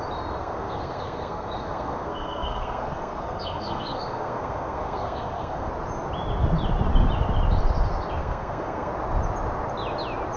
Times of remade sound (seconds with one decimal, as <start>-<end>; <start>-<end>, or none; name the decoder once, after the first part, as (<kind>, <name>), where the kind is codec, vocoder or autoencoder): 0.4-5.7 (codec, SNAC); 8.2-8.9

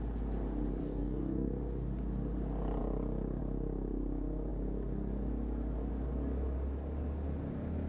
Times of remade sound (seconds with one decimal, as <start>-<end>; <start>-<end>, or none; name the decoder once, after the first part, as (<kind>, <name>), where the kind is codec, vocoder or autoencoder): 0.8-1.5 (codec, DAC)

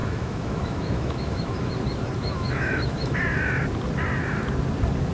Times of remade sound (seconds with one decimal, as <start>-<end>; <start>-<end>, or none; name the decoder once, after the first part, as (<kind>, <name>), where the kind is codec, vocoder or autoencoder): 0.0-1.7 (autoencoder, DAC-VAE); 2.2-3.2